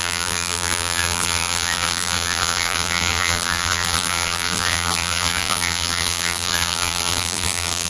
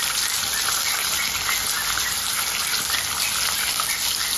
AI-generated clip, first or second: first